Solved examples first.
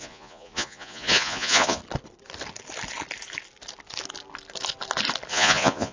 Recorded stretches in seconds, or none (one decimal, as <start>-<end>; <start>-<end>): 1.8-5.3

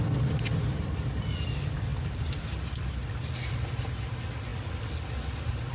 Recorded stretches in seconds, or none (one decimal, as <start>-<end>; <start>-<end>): 0.0-5.7

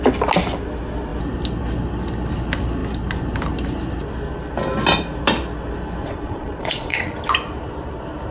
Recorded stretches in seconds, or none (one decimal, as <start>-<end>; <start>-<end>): 0.0-6.0; 7.1-8.3

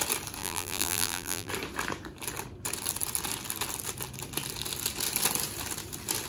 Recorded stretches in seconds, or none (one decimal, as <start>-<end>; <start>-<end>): 0.0-0.4; 1.5-6.3

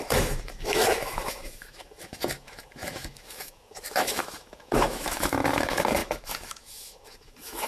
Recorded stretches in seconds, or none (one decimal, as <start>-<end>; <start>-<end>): none